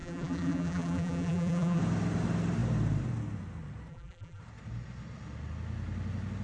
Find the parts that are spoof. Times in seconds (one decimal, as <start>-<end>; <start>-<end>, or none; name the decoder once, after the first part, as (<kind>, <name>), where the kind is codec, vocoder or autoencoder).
0.0-1.8 (vocoder, BigVGAN v2); 3.9-4.4

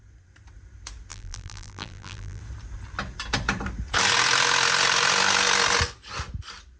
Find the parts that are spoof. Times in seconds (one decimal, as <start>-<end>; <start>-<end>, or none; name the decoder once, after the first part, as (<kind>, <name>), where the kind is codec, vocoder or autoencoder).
1.1-2.4 (vocoder, BigVGAN v2)

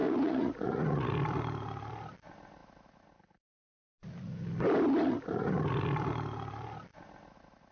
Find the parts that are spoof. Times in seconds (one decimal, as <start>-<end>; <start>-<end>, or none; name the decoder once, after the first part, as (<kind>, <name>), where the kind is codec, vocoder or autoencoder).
0.0-1.1 (vocoder, Vocos)

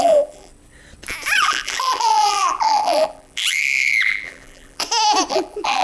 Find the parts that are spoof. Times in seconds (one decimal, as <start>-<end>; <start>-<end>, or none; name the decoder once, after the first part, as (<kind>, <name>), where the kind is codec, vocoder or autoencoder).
0.0-0.5 (vocoder, BigVGAN v2); 1.4-4.8; 5.3-5.8

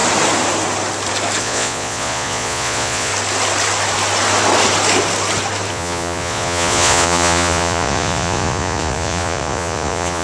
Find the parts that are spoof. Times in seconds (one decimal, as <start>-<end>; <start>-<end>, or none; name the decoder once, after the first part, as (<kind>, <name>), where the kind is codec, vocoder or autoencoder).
1.4-3.1 (vocoder, Vocos); 5.7-10.2

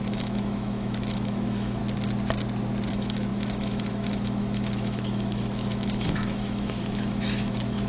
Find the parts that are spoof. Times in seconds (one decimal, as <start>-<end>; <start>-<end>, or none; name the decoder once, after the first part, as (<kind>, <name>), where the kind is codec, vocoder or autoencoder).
0.0-1.8 (autoencoder, DAC-VAE); 2.9-7.9

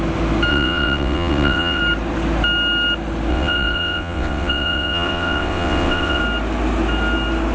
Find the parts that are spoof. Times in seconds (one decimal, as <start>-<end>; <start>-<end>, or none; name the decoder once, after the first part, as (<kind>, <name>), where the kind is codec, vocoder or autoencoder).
0.5-1.8 (vocoder, WaveNeXt); 3.3-6.2